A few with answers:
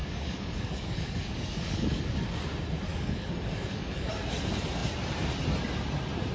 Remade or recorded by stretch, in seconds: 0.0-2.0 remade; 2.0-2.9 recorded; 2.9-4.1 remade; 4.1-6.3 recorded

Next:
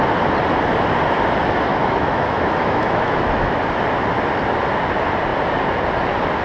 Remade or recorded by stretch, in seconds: 0.0-1.7 recorded; 1.7-3.6 remade; 3.6-6.4 recorded

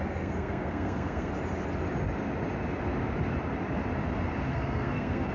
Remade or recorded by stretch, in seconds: 0.0-1.3 remade; 1.3-4.5 recorded; 4.5-5.3 remade